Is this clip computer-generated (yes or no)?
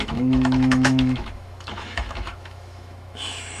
yes